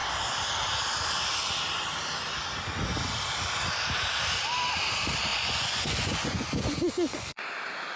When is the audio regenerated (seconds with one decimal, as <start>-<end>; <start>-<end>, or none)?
5.3-7.4